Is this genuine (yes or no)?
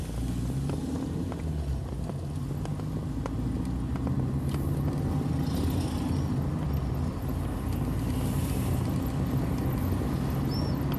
yes